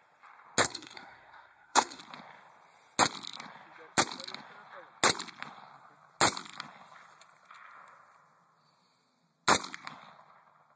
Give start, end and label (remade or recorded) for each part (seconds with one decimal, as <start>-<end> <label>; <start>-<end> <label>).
0.0-0.6 recorded; 0.6-2.0 remade; 2.0-10.8 recorded